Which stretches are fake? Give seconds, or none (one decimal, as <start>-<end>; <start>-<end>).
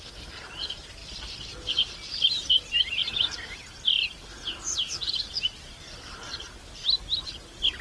none